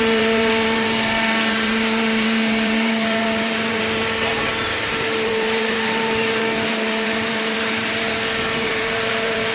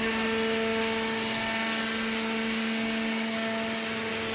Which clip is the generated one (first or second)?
first